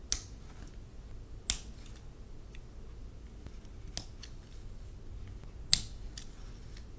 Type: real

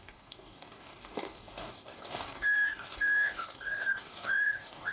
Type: fake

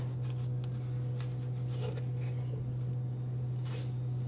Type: real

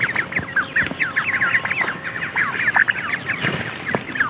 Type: real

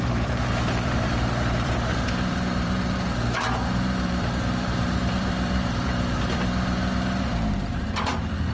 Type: fake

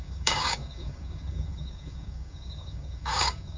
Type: fake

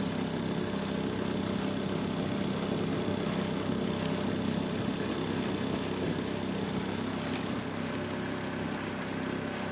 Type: real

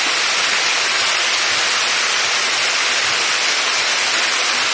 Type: real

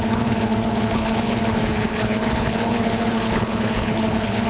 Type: fake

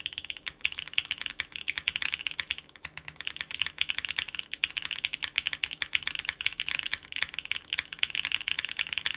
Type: fake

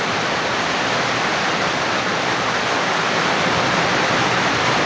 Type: real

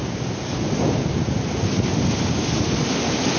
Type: real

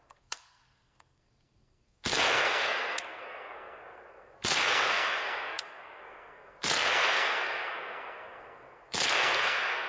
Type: fake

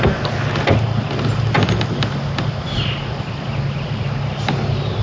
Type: real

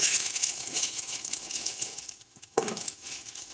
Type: fake